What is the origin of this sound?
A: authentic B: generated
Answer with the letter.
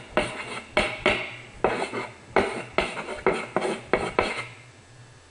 A